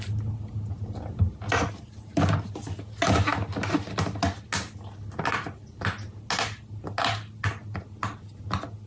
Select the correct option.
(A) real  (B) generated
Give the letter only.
A